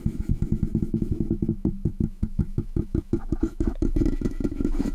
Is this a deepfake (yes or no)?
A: yes